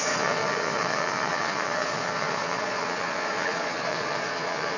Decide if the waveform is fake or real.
fake